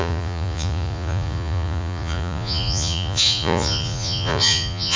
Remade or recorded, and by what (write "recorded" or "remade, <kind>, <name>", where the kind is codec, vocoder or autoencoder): remade, vocoder, Vocos